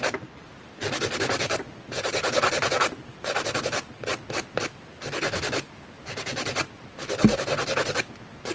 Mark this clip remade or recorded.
recorded